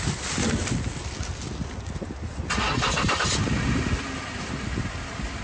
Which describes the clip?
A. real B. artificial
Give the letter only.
A